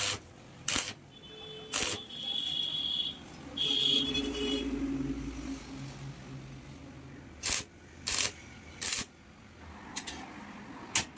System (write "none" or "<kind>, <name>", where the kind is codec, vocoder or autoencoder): none